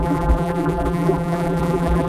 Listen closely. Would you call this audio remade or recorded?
remade